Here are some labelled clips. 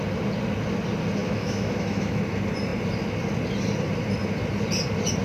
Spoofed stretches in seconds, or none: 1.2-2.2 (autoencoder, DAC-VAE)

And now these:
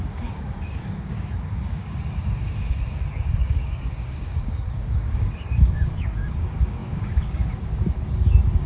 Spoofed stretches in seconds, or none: 0.0-8.7 (codec, DAC)

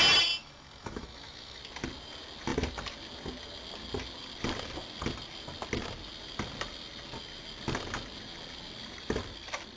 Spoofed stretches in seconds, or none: 0.4-1.6 (autoencoder, DAC-VAE)

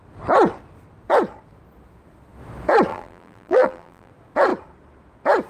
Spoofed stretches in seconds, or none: 2.9-4.1 (vocoder, BigVGAN v2)

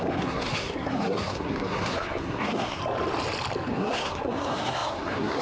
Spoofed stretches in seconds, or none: 0.0-2.8 (codec, SNAC); 3.7-5.4

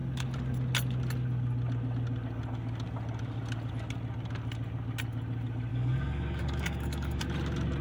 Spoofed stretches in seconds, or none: 5.7-7.2 (codec, DAC)